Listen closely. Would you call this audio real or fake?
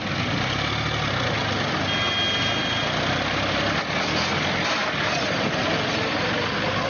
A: real